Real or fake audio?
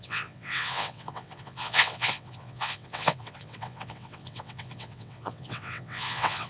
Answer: fake